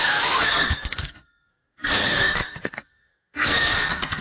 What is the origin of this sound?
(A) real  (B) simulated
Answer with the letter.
B